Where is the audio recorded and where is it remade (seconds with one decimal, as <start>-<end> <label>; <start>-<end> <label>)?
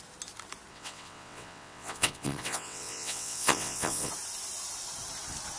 0.0-0.7 recorded; 0.7-4.1 remade; 4.1-5.6 recorded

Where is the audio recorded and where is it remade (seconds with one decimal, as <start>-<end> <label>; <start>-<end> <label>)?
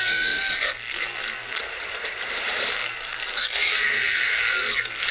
0.0-1.6 remade; 1.6-2.7 recorded; 2.7-5.1 remade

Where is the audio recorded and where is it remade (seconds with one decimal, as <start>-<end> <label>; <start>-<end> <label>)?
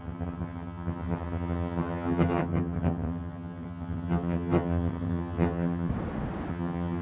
0.0-5.9 remade; 5.9-6.5 recorded; 6.5-7.0 remade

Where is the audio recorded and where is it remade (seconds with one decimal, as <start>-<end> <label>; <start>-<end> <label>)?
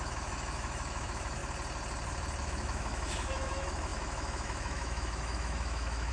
0.0-1.4 remade; 1.4-2.4 recorded; 2.4-6.1 remade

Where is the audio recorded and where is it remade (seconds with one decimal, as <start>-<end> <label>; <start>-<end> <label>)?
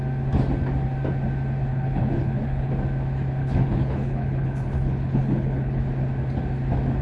0.0-1.7 recorded; 1.7-2.7 remade; 2.7-3.4 recorded; 3.4-5.8 remade; 5.8-7.0 recorded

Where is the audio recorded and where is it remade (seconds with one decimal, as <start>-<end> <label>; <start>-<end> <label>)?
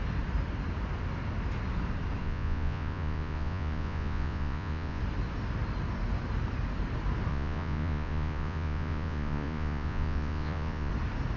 0.0-2.2 recorded; 2.2-5.0 remade; 5.0-7.3 recorded; 7.3-10.9 remade; 10.9-11.4 recorded